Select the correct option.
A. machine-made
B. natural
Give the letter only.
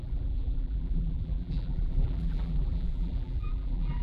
A